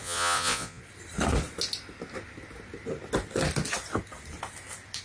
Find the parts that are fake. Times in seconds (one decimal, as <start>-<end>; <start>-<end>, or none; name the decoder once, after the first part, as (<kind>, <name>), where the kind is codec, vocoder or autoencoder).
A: 0.0-0.8 (vocoder, Vocos)